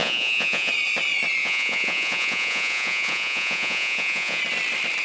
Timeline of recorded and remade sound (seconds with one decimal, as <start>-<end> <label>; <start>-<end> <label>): 0.0-0.7 remade; 0.7-1.4 recorded; 1.4-4.4 remade; 4.4-5.0 recorded